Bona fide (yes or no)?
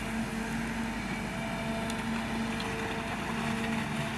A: yes